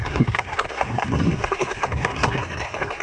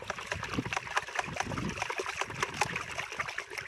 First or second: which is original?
second